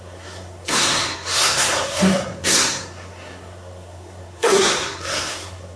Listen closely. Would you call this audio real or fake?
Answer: fake